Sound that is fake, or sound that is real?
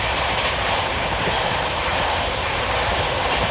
fake